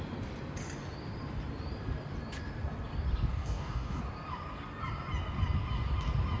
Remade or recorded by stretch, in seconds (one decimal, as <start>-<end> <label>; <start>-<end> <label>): 0.0-3.3 recorded; 3.3-4.0 remade; 4.0-6.4 recorded